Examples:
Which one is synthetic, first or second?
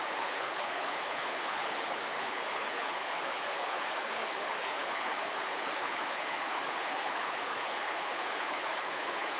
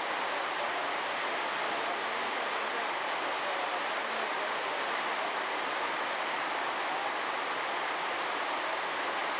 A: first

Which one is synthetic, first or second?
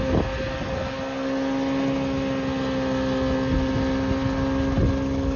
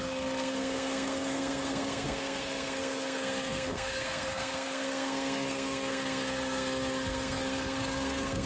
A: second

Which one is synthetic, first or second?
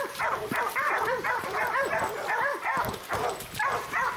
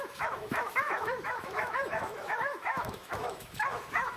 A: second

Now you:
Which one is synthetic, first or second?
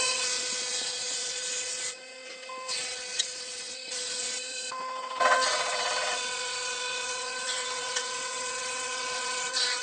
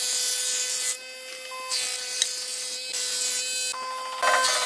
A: first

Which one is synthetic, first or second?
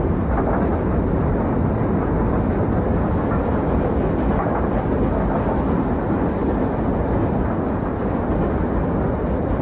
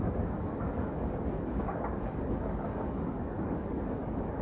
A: second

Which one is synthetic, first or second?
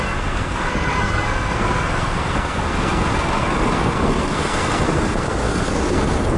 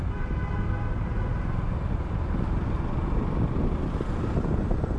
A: first